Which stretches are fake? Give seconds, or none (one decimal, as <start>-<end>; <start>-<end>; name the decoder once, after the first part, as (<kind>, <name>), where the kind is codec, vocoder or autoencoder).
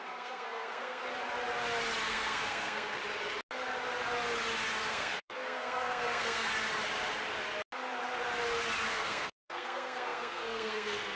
0.0-1.0 (codec, SNAC); 2.0-3.0; 4.9-6.5; 8.9-11.2